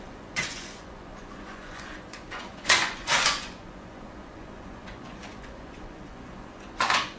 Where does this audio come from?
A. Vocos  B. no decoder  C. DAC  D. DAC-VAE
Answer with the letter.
A